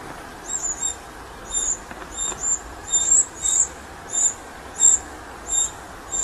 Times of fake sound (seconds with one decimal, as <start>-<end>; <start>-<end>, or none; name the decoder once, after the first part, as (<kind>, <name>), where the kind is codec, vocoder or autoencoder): 1.3-2.0 (vocoder, BigVGAN v2); 2.6-6.2